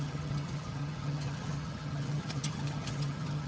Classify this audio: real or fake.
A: fake